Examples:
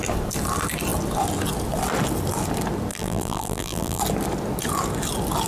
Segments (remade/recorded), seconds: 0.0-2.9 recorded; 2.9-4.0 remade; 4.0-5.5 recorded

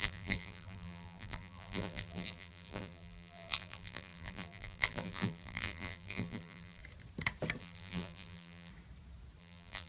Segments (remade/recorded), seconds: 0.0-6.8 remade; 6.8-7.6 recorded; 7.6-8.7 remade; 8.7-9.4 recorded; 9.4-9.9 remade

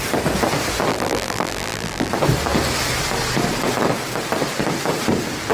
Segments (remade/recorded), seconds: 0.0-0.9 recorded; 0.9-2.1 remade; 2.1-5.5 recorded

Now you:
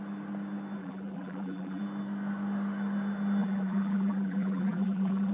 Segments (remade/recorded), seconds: 0.0-0.8 recorded; 0.8-1.8 remade; 1.8-3.4 recorded; 3.4-5.3 remade